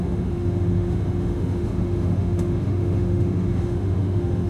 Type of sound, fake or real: fake